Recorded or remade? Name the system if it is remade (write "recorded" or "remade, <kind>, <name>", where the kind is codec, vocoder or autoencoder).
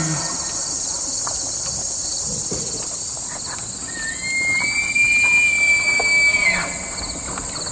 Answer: recorded